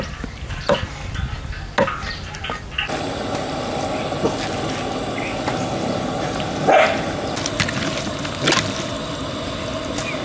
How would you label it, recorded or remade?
recorded